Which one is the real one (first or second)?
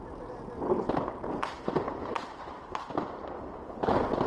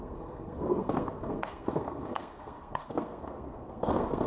first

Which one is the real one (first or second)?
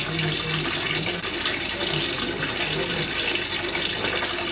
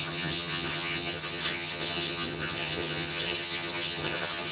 first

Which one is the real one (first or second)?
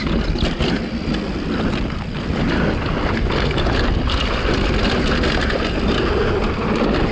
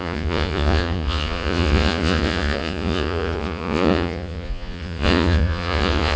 first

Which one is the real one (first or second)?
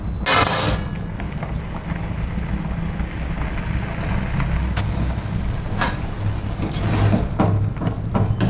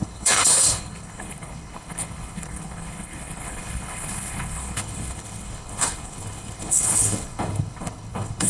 first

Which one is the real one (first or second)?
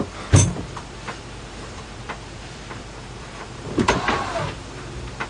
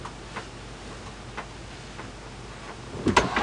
second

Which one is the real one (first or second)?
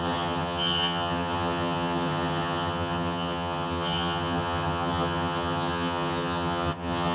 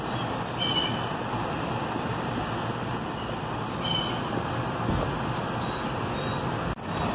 second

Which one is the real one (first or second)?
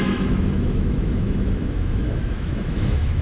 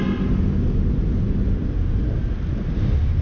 second